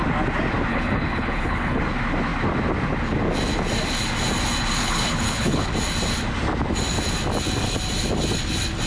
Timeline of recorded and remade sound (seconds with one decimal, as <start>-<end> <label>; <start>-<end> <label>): 0.0-0.7 recorded; 0.7-1.8 remade; 1.8-4.8 recorded; 4.8-5.7 remade; 5.7-8.9 recorded